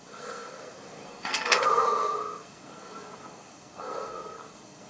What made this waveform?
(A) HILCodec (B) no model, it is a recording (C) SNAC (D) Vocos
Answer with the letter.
C